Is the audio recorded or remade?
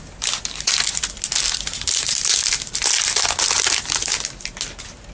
recorded